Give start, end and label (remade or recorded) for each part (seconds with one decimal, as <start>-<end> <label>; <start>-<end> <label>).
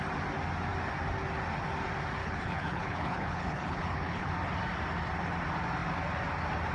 0.0-2.2 recorded; 2.2-4.3 remade; 4.3-6.7 recorded